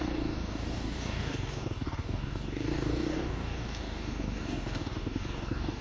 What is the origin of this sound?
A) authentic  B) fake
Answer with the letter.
B